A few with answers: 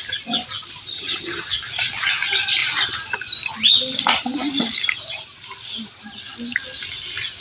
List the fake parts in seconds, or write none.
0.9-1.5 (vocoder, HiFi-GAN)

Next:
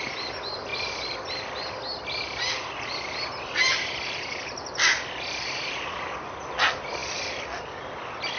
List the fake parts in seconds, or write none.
none

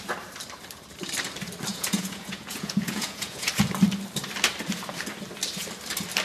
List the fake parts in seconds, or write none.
1.7-3.5 (vocoder, Vocos)

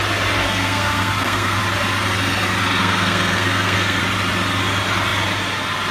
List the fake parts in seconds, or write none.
0.4-1.6 (codec, SNAC); 2.8-4.0

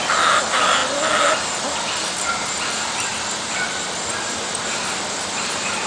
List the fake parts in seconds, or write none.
none

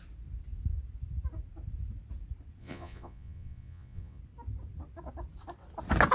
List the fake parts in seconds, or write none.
2.6-4.2 (vocoder, Vocos)

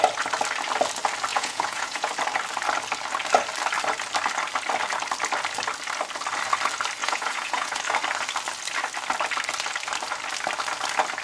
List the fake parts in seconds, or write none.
1.3-2.1 (vocoder, Vocos); 7.0-7.8

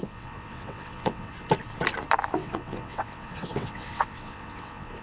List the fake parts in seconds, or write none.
0.0-1.3 (vocoder, WaveNeXt); 2.3-5.0